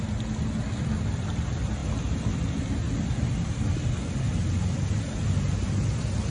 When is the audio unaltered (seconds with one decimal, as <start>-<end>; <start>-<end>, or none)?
0.0-6.3